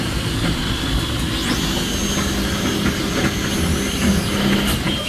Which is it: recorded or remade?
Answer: recorded